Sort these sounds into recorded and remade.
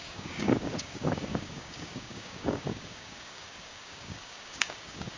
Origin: remade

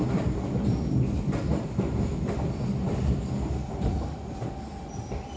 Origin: recorded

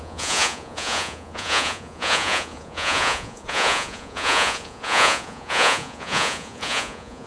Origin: remade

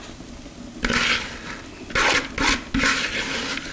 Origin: recorded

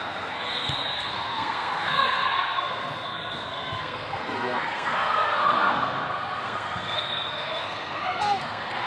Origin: remade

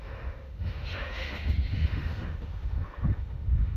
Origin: remade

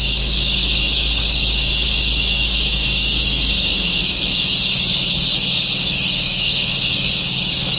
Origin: remade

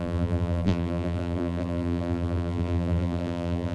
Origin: remade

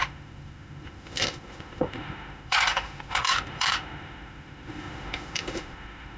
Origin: remade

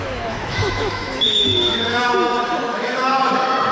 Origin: remade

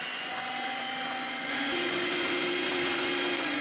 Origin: remade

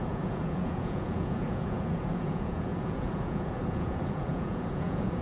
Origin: remade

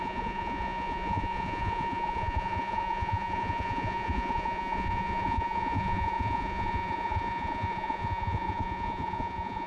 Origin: remade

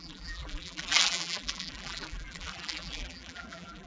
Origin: remade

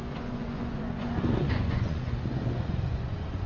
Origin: remade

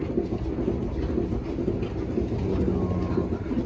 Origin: recorded